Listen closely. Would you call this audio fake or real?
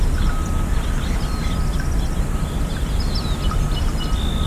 real